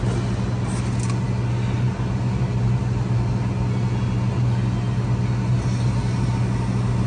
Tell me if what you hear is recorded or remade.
recorded